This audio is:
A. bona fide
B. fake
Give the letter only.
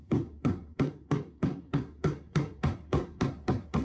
B